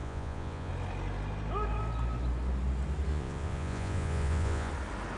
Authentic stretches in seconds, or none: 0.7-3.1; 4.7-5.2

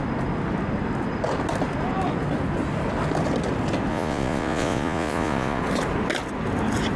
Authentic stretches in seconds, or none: 0.0-3.9; 5.6-7.0

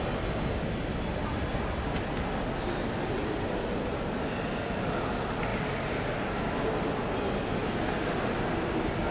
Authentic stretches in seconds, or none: 0.0-9.1

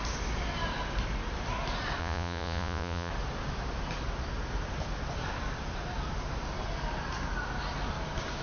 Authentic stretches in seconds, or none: 0.0-2.0; 3.1-8.4